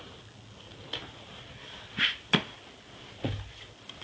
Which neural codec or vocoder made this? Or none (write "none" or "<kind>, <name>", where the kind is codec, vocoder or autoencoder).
none